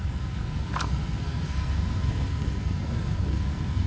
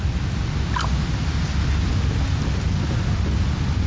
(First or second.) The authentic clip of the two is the second